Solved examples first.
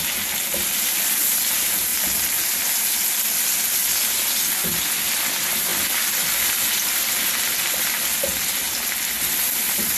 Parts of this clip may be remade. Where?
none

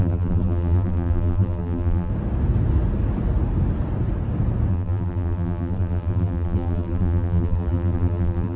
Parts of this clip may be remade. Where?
0.0-2.1; 4.7-8.6

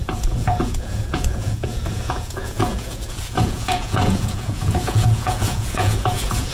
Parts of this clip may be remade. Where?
0.0-6.5

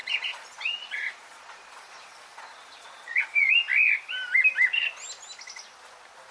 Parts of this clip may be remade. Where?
0.0-3.5

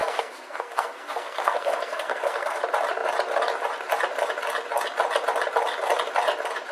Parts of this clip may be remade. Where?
0.0-2.6

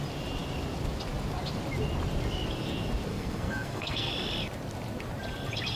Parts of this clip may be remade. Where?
3.1-4.1

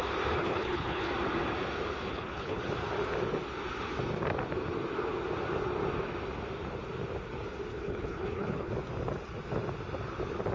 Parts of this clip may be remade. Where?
0.4-1.1; 2.1-2.6; 7.7-8.7